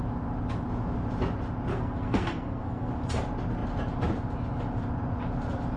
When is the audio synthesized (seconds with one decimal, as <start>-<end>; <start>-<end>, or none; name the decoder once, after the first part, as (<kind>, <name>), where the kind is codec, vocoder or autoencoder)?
1.7-2.9 (codec, SNAC)